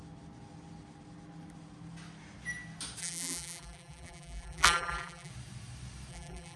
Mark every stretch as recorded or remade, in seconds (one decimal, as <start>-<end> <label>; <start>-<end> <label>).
0.0-3.0 recorded; 3.0-5.3 remade; 5.3-6.1 recorded; 6.1-6.6 remade